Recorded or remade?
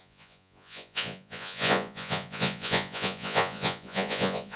remade